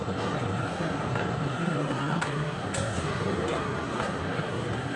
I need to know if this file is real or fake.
fake